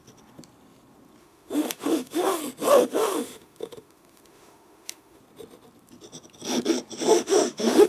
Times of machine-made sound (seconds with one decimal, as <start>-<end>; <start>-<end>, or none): 1.2-2.4; 2.8-5.2; 7.1-7.9